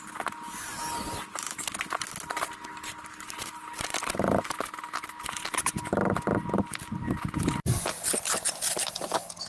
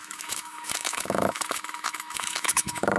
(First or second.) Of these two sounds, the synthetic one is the second